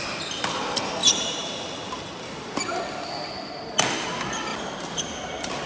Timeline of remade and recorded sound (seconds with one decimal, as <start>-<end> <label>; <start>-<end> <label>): 0.0-1.0 recorded; 1.0-2.8 remade; 2.8-5.7 recorded